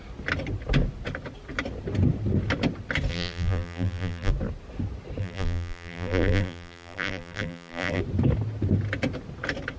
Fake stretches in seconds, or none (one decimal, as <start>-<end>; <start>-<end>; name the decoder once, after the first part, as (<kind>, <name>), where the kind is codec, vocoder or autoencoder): 3.1-4.3 (vocoder, BigVGAN v2); 5.2-8.0